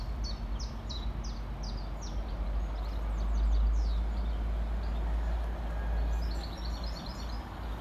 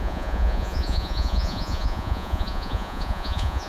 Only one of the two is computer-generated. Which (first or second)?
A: second